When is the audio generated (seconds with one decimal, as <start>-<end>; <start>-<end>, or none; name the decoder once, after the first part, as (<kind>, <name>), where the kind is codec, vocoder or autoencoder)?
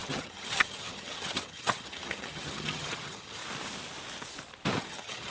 0.0-3.4 (vocoder, HiFi-GAN); 4.8-5.3